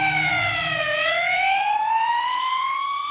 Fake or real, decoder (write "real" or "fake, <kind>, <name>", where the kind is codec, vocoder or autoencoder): fake, vocoder, WaveNeXt